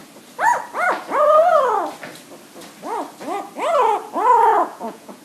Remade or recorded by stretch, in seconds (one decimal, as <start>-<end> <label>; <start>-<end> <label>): 0.0-4.5 recorded; 4.5-5.2 remade